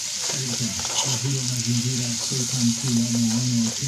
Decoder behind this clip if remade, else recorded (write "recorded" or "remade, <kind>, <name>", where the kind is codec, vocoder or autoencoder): recorded